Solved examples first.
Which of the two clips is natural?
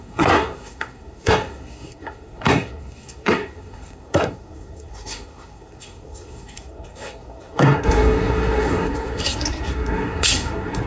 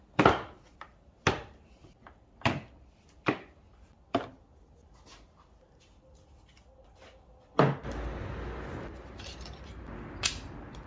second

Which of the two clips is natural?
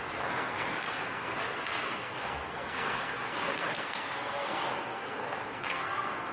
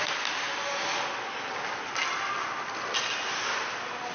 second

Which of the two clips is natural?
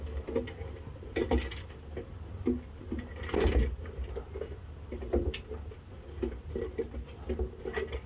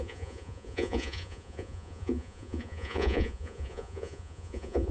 first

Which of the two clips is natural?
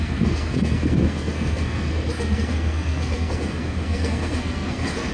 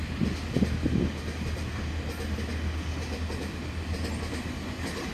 second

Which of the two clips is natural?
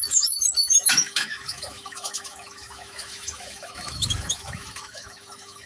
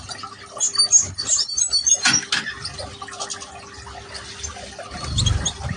second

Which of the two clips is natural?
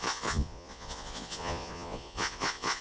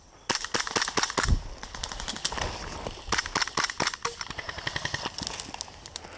second